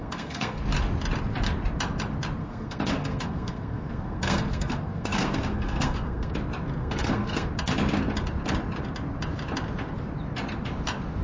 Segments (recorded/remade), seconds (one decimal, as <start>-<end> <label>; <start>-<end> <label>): 0.0-0.6 remade; 0.6-2.4 recorded; 2.4-6.3 remade; 6.3-6.8 recorded; 6.8-7.5 remade; 7.5-11.2 recorded